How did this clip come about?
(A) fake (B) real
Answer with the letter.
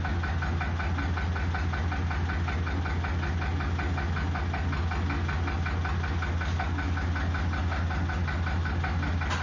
B